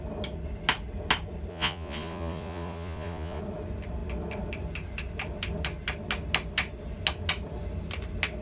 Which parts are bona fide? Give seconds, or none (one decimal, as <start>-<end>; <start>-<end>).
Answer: 0.0-1.5; 3.4-8.4